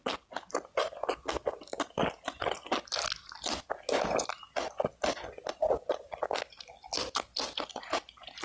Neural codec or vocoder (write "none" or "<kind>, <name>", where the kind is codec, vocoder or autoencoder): none